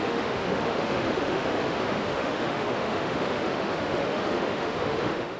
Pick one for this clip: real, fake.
fake